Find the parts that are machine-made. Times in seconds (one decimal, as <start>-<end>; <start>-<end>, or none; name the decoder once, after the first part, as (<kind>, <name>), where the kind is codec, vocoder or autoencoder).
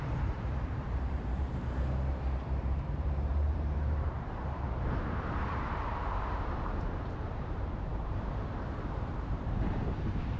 0.0-10.4 (vocoder, BigVGAN v2)